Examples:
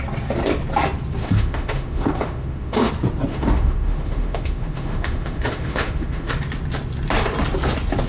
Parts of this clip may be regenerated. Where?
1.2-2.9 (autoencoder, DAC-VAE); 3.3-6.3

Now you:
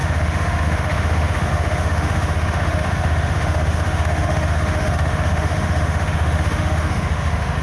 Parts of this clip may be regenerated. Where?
0.0-7.6 (autoencoder, DAC-VAE)

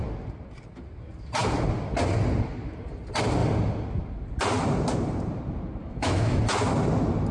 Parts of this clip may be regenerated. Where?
5.8-6.4 (autoencoder, DAC-VAE)

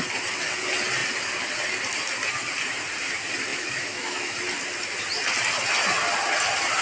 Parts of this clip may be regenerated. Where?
3.5-4.4 (autoencoder, DAC-VAE)

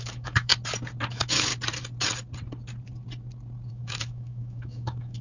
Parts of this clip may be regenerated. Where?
0.0-0.5 (autoencoder, DAC-VAE); 1.1-1.5; 3.7-5.2

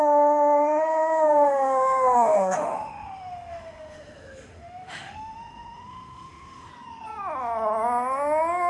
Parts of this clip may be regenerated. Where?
0.0-6.7 (autoencoder, DAC-VAE)